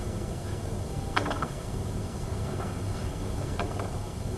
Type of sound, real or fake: fake